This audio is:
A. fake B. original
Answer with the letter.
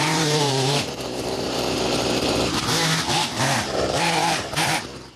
A